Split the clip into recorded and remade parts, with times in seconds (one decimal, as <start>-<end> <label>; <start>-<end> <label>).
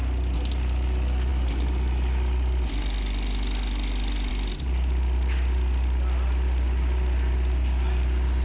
0.0-8.4 recorded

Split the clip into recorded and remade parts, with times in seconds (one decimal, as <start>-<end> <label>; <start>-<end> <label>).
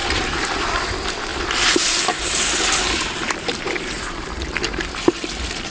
0.0-0.5 remade; 0.5-1.3 recorded; 1.3-4.3 remade; 4.3-5.7 recorded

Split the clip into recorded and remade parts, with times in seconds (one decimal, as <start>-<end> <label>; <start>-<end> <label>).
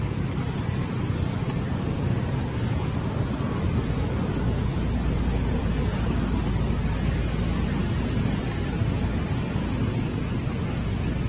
0.0-11.3 recorded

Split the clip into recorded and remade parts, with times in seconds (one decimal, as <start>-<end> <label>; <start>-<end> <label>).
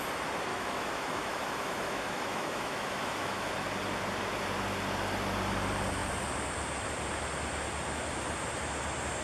0.0-0.5 recorded; 0.5-3.5 remade; 3.5-9.2 recorded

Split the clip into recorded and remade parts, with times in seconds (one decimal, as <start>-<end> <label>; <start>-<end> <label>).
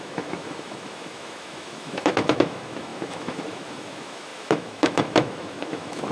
0.0-6.1 remade